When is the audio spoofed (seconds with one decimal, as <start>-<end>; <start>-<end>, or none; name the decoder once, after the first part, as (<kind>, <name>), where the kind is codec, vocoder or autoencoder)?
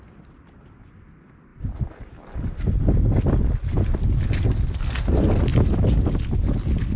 none